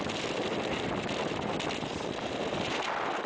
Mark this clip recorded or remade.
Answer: remade